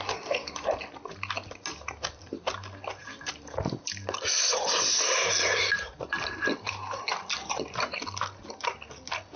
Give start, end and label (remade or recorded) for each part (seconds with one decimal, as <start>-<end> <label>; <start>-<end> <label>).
0.0-3.0 recorded; 3.0-7.8 remade; 7.8-9.4 recorded